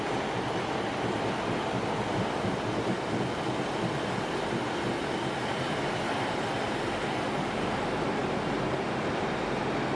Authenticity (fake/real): real